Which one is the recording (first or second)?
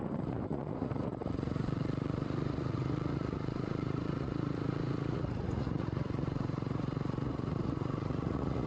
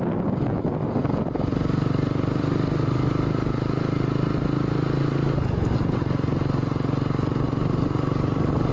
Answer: second